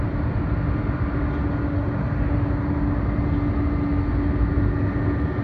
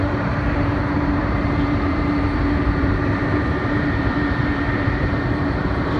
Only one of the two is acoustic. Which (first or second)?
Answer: first